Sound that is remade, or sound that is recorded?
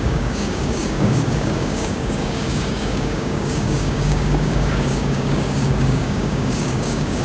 remade